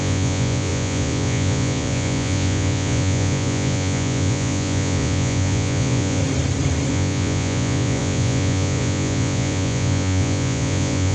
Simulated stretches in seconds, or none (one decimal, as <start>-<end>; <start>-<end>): 0.0-6.2; 6.9-11.1